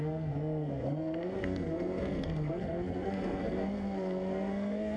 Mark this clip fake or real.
fake